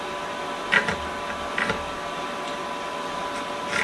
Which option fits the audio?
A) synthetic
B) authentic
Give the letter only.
B